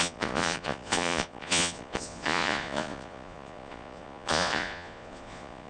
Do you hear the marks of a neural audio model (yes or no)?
yes